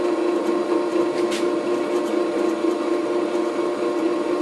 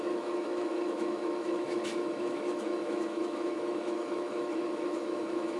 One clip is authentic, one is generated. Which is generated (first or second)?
second